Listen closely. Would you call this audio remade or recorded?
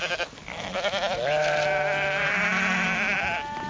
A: recorded